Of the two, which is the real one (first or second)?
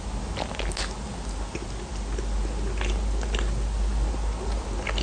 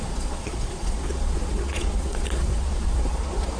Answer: first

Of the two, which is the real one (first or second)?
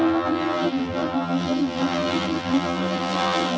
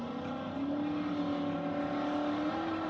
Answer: second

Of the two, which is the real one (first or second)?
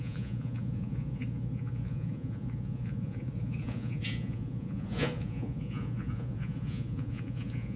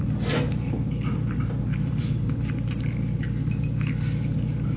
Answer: second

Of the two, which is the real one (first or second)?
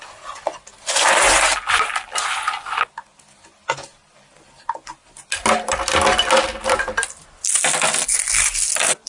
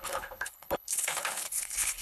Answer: first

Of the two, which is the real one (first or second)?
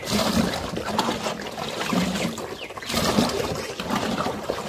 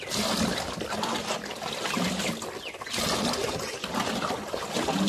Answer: second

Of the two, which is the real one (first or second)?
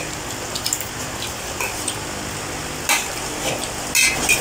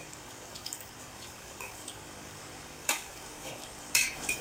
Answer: first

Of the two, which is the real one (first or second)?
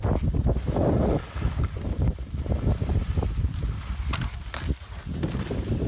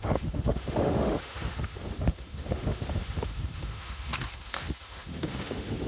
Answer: first